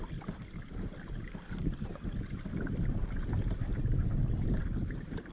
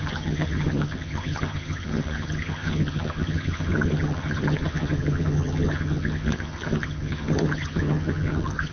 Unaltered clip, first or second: first